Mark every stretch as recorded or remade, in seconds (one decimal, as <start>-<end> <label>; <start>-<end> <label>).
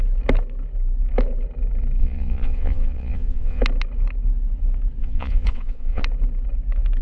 0.0-2.0 recorded; 2.0-3.6 remade; 3.6-5.0 recorded; 5.0-6.0 remade; 6.0-7.0 recorded